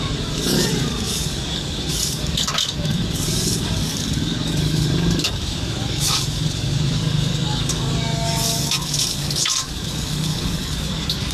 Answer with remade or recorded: remade